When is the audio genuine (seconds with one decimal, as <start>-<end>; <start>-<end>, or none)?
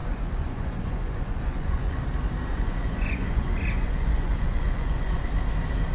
2.0-2.5; 5.2-5.9